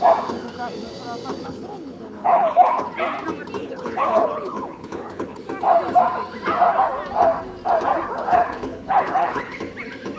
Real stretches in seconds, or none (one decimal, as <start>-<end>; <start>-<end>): 0.0-1.4; 2.9-3.6; 5.4-8.3; 9.6-10.2

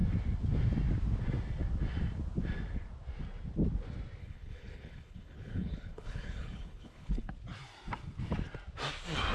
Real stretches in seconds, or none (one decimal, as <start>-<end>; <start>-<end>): 0.0-4.2; 7.3-9.3